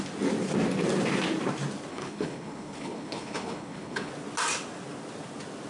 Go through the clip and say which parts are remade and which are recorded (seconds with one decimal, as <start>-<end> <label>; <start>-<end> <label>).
0.0-1.9 recorded; 1.9-4.1 remade; 4.1-5.7 recorded